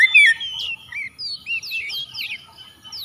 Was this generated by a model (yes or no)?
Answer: no